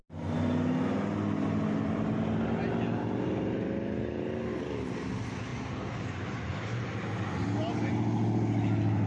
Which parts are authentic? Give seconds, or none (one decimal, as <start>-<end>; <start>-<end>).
0.0-9.1